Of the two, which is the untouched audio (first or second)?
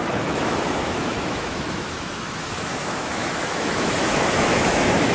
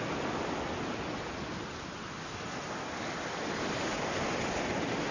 second